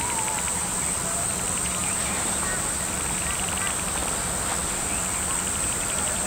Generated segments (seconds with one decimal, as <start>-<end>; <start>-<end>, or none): 1.8-2.7

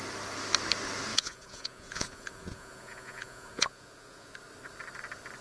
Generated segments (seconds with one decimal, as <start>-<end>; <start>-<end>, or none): 1.1-4.3

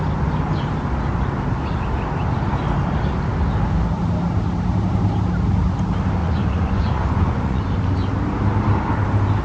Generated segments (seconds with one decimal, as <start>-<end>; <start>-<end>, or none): 6.2-7.6

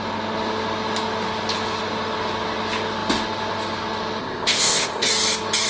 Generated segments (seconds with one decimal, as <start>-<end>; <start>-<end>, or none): 4.2-5.1